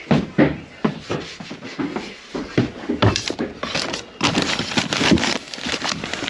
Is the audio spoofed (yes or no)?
no